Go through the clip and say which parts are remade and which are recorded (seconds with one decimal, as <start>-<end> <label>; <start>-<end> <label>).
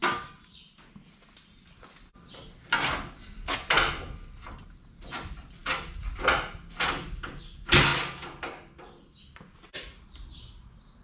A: 0.0-11.0 recorded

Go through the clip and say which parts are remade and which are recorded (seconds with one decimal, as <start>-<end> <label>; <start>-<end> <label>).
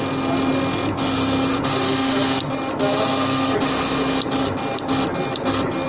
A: 0.0-5.9 recorded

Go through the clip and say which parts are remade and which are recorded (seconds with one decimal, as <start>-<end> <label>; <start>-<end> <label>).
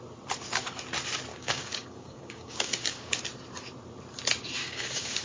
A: 0.0-1.3 recorded; 1.3-3.2 remade; 3.2-4.6 recorded; 4.6-5.2 remade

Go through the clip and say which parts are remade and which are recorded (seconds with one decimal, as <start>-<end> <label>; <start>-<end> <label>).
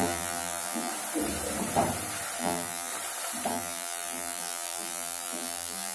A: 0.0-0.9 remade; 0.9-2.4 recorded; 2.4-2.9 remade; 2.9-3.5 recorded; 3.5-5.9 remade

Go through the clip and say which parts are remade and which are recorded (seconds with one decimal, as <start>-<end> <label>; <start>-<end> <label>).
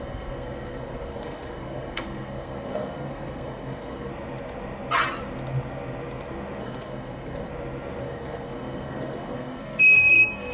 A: 0.0-4.1 remade; 4.1-6.6 recorded; 6.6-7.5 remade; 7.5-8.0 recorded; 8.0-10.5 remade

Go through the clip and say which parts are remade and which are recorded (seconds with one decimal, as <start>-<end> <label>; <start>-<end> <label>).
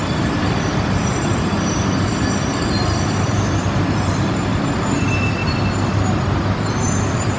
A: 0.0-0.6 recorded; 0.6-2.1 remade; 2.1-2.8 recorded; 2.8-5.4 remade; 5.4-6.1 recorded; 6.1-7.4 remade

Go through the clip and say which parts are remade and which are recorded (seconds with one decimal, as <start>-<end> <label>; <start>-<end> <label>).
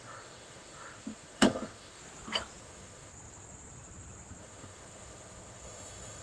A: 0.0-2.0 remade; 2.0-2.6 recorded; 2.6-3.1 remade; 3.1-4.4 recorded; 4.4-6.2 remade